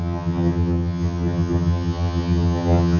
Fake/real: fake